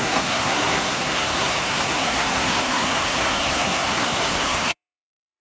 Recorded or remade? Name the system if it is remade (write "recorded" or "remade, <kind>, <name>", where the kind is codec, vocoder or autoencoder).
remade, codec, SNAC